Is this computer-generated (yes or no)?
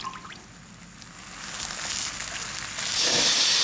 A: no